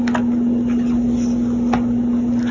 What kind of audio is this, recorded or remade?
recorded